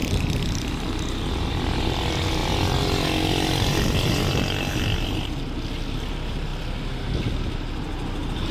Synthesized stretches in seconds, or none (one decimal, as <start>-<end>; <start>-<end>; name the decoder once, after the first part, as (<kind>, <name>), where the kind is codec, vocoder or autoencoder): none